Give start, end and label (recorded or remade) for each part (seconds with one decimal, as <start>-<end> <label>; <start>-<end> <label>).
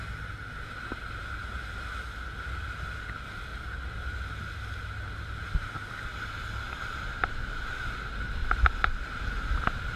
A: 0.0-10.0 recorded